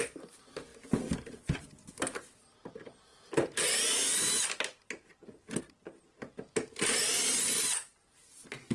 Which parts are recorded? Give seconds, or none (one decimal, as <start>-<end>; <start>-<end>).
0.0-0.7; 1.9-8.7